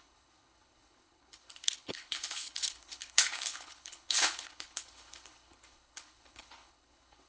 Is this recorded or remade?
remade